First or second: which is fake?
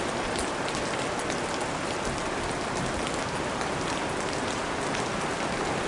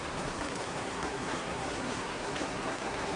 second